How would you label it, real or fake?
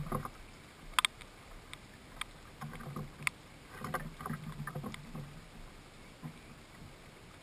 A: real